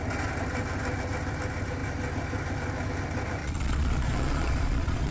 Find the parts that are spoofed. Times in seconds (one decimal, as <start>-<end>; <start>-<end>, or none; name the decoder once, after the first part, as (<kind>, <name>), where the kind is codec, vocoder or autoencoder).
3.4-5.1 (vocoder, Vocos)